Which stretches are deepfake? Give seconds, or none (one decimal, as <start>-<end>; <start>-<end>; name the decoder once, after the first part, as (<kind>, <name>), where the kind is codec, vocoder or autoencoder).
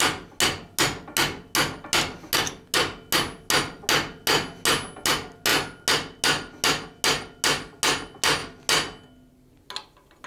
none